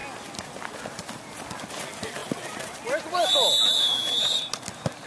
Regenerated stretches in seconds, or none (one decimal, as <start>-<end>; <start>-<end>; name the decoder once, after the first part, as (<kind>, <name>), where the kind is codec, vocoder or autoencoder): none